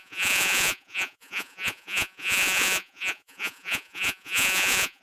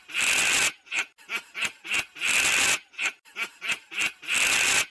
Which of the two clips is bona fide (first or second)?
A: second